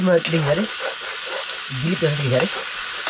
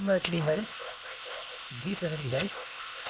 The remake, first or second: second